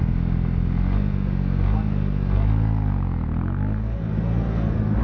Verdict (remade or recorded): recorded